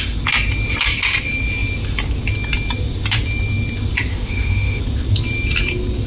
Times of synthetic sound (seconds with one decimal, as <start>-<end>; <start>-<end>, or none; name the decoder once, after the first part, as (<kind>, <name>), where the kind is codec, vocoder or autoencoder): 4.1-4.8 (autoencoder, DAC-VAE)